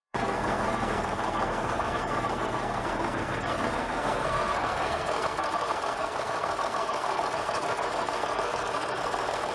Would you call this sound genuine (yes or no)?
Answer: no